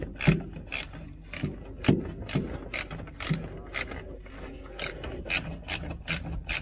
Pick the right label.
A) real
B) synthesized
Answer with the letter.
A